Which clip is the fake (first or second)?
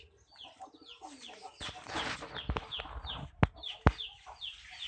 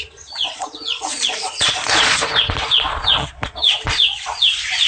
second